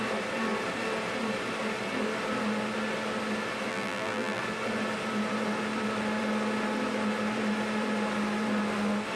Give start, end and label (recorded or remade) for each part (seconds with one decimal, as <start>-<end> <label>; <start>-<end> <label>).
0.0-3.7 recorded; 3.7-4.4 remade; 4.4-9.2 recorded